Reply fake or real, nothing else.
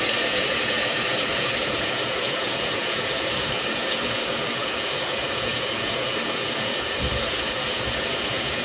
fake